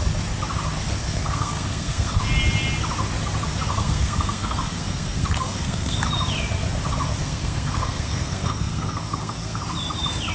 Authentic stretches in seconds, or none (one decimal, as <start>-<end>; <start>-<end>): 0.0-1.0; 2.2-3.7; 6.0-7.2; 9.6-10.3